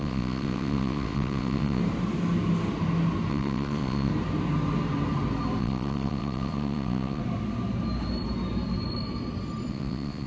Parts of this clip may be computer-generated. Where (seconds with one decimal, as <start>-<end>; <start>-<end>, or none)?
0.0-1.8; 3.3-4.1; 5.6-7.2; 9.7-10.3